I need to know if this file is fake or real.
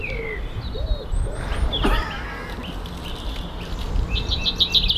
real